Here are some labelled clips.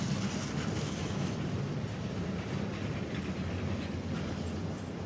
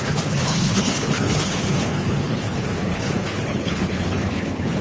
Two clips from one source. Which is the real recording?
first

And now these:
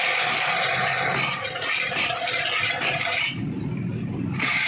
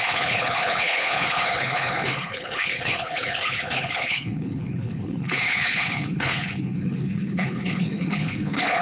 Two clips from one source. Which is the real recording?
first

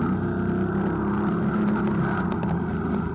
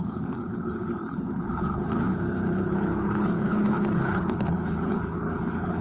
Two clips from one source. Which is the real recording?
first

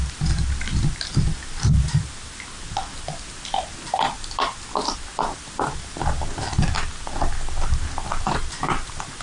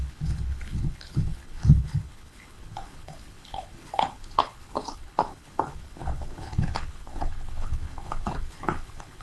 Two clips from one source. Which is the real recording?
first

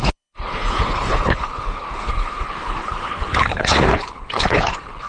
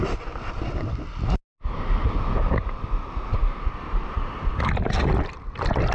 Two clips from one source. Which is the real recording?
second